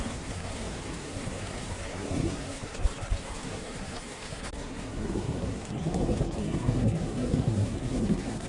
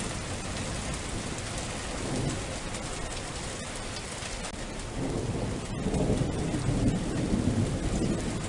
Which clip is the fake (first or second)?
first